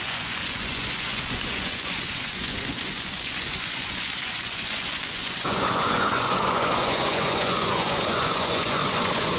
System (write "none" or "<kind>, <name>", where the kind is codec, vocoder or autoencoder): vocoder, Vocos